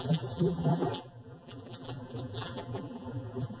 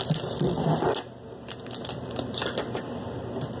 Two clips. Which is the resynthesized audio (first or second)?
first